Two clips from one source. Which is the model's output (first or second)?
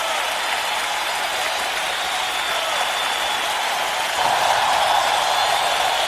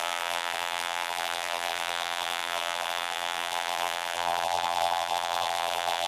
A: second